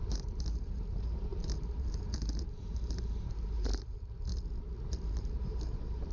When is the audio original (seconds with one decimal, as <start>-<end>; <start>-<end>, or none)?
4.3-4.9